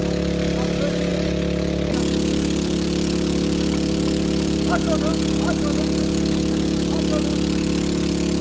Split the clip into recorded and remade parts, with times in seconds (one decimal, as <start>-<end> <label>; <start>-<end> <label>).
0.0-8.4 recorded